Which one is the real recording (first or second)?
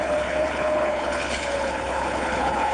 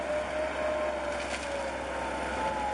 second